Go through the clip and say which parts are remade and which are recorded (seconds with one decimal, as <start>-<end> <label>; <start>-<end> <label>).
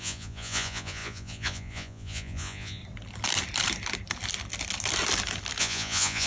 0.0-2.8 remade; 2.8-5.6 recorded; 5.6-6.3 remade